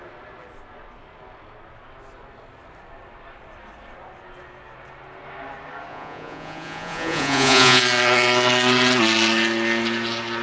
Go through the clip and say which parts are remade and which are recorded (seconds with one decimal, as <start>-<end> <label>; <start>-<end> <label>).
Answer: 0.0-5.9 recorded; 5.9-7.8 remade; 7.8-10.4 recorded